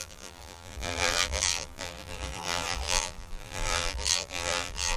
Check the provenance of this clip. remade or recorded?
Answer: remade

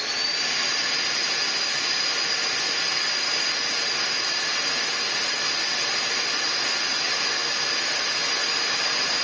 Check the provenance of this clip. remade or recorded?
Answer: recorded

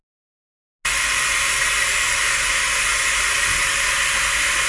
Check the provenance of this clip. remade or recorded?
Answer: recorded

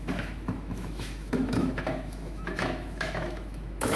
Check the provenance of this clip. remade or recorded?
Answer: remade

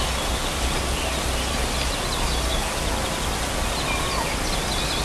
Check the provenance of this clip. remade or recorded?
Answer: recorded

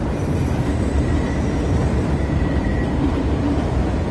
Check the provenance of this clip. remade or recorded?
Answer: remade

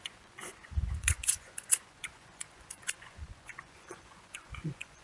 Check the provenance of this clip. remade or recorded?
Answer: remade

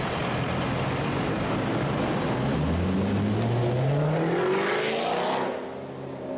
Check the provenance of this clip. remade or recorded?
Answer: recorded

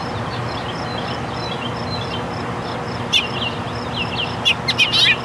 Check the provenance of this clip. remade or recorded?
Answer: recorded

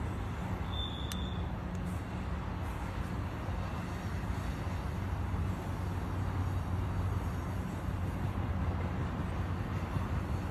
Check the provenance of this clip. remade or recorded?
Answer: recorded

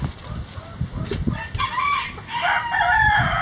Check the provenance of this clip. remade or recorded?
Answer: recorded